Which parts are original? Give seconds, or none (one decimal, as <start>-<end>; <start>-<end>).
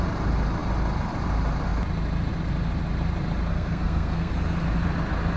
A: 0.0-3.5; 4.3-5.4